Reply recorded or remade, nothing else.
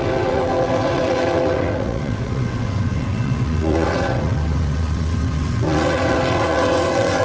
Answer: remade